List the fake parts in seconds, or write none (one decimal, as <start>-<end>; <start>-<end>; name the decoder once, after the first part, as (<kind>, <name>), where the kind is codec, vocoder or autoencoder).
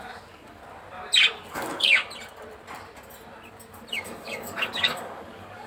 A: 0.0-0.6 (codec, DAC); 1.5-2.0; 3.9-5.7